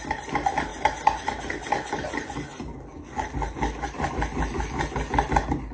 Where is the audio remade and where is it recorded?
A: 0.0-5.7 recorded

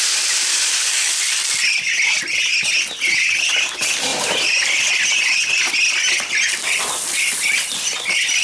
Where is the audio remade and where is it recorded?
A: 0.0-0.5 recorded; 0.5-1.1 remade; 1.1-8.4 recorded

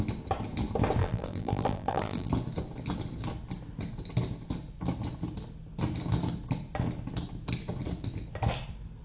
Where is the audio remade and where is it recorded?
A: 0.0-1.0 recorded; 1.0-2.3 remade; 2.3-9.0 recorded

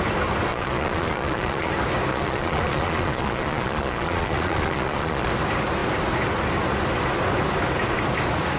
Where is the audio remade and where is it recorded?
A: 0.0-0.5 recorded; 0.5-1.7 remade; 1.7-2.1 recorded; 2.1-5.3 remade; 5.3-8.6 recorded

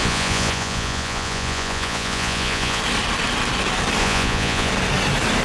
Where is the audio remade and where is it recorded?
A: 0.0-2.8 remade; 2.8-4.0 recorded; 4.0-4.7 remade; 4.7-5.4 recorded

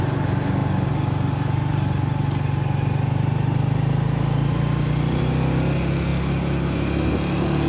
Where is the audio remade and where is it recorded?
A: 0.0-7.7 recorded